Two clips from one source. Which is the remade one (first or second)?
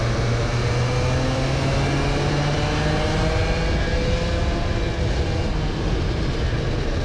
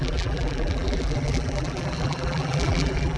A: second